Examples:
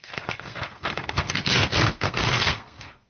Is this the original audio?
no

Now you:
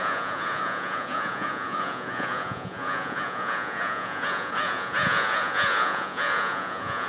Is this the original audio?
no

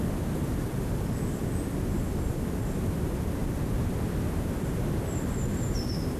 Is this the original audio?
yes